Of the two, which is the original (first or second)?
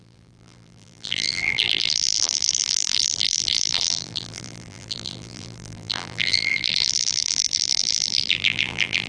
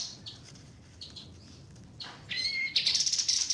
second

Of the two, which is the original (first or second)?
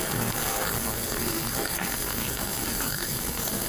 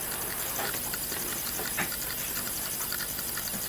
second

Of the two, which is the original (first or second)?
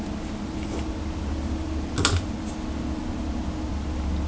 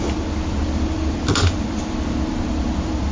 first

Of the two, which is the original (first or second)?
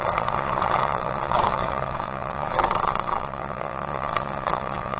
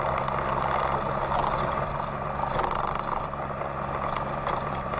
second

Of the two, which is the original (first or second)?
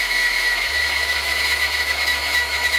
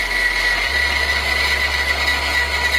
second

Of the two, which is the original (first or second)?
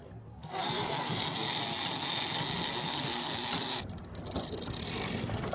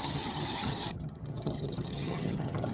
first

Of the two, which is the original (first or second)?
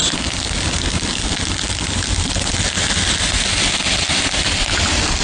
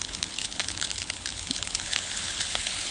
first